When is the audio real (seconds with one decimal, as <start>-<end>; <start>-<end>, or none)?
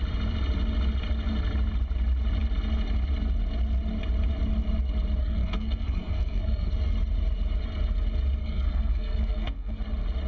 0.0-5.2; 6.7-8.4; 9.8-10.3